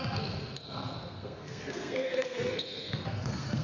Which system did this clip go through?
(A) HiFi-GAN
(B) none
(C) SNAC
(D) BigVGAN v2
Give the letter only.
C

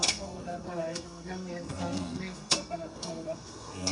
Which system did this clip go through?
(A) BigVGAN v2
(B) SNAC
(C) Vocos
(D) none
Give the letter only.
B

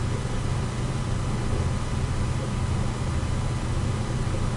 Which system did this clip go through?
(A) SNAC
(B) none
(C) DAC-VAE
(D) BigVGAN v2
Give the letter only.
B